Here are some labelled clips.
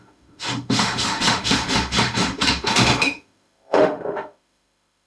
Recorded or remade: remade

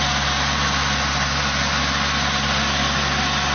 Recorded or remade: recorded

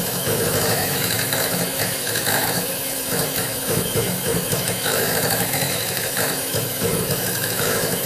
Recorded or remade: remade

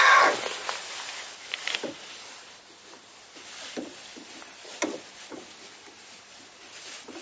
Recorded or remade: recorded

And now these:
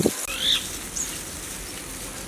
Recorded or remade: recorded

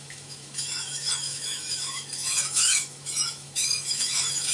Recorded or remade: remade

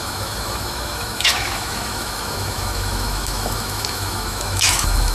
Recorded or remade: remade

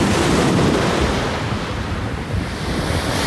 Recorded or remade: recorded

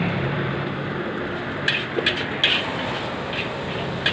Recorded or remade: recorded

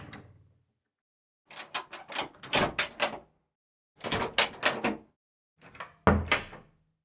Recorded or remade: recorded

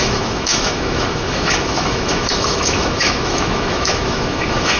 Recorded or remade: remade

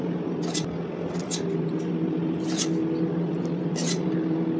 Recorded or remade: recorded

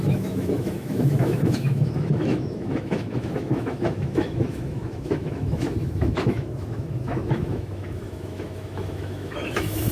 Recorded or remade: remade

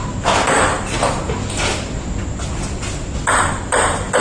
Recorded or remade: recorded